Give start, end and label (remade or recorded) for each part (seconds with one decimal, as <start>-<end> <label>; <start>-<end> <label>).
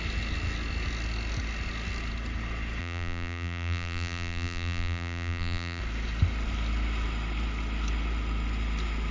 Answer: 0.0-2.8 recorded; 2.8-5.8 remade; 5.8-9.1 recorded